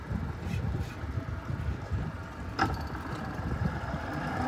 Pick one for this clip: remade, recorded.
recorded